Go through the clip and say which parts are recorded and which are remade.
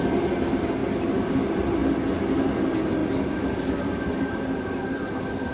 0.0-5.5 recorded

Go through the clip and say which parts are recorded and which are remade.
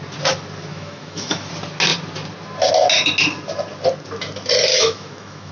0.0-0.7 recorded; 0.7-1.5 remade; 1.5-4.7 recorded; 4.7-5.5 remade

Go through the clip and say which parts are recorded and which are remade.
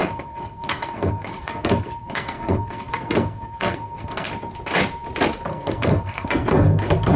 0.0-4.3 remade; 4.3-5.5 recorded; 5.5-7.2 remade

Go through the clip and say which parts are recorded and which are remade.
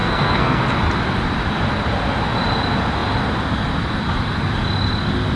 0.0-0.6 remade; 0.6-5.4 recorded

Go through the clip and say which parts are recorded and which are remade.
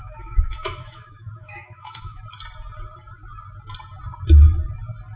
0.0-2.2 remade; 2.2-5.2 recorded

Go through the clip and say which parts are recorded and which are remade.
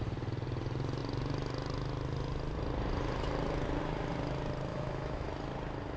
0.0-4.7 recorded; 4.7-5.3 remade; 5.3-6.0 recorded